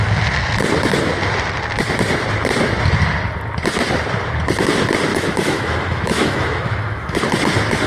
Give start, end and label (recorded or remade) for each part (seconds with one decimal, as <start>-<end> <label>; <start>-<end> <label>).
0.0-5.1 recorded; 5.1-7.2 remade; 7.2-7.9 recorded